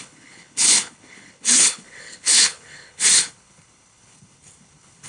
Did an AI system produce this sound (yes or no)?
yes